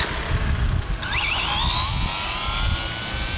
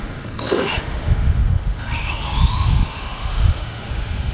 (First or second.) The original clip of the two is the first